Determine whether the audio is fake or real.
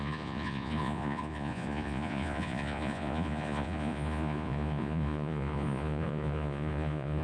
fake